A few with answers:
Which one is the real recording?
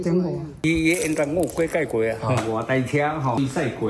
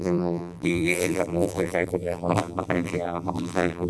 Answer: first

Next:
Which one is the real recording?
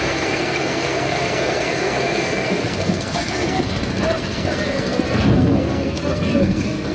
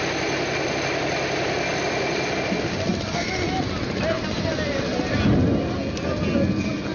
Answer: second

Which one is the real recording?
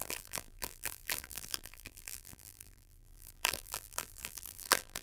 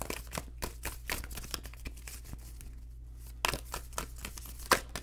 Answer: second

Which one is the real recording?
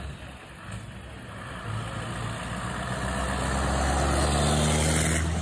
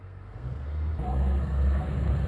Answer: first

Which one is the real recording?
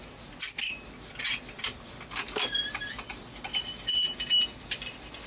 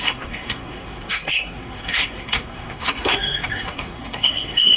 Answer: first